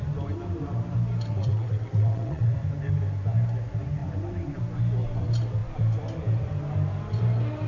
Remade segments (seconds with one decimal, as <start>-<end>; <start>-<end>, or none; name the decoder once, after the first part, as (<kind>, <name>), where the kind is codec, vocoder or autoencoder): 1.3-2.5 (vocoder, WaveNeXt)